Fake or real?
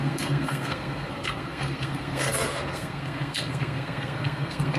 fake